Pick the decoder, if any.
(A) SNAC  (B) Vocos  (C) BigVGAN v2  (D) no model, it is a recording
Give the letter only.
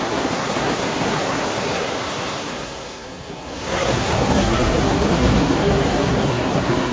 A